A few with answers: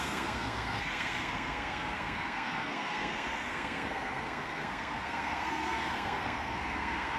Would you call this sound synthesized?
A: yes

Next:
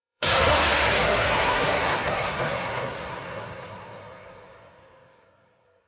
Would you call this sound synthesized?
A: yes